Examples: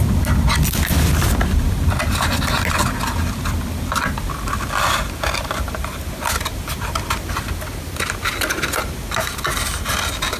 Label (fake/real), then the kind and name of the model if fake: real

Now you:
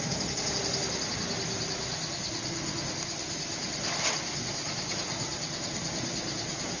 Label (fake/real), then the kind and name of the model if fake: real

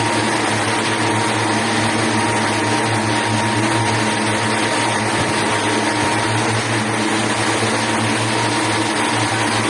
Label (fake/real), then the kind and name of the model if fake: real